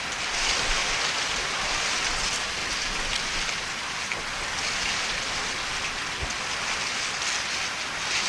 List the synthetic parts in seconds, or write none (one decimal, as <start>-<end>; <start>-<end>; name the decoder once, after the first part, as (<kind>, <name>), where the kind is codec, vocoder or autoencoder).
none